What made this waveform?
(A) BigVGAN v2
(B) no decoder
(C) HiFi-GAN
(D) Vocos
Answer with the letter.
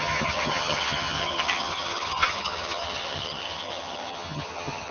C